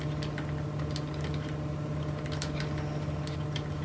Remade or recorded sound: recorded